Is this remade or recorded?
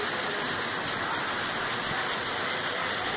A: recorded